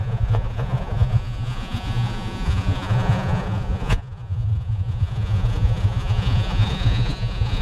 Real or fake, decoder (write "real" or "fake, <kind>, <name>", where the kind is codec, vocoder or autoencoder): fake, vocoder, Vocos